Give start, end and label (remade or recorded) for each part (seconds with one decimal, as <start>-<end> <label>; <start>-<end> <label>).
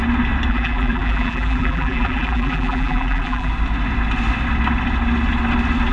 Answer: 0.0-0.5 recorded; 0.5-3.5 remade; 3.5-5.9 recorded